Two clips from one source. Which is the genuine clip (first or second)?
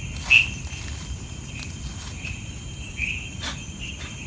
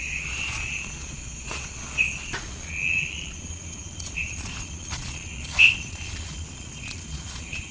first